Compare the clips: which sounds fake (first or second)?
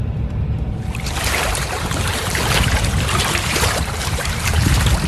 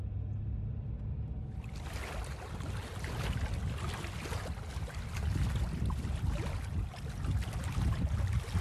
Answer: first